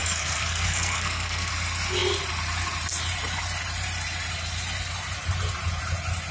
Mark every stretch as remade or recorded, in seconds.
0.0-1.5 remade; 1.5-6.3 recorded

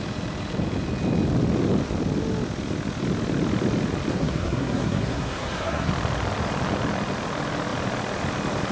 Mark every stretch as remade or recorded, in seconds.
0.0-4.1 recorded; 4.1-5.9 remade; 5.9-8.7 recorded

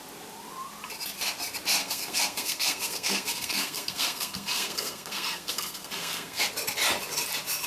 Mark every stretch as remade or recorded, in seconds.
0.0-1.8 recorded; 1.8-6.4 remade; 6.4-7.7 recorded

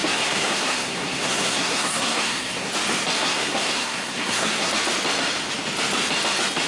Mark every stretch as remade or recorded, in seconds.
0.0-2.7 remade; 2.7-3.2 recorded; 3.2-4.7 remade; 4.7-6.7 recorded